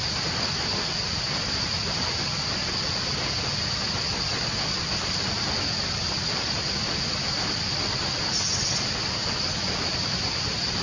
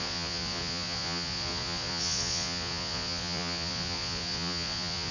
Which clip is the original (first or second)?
first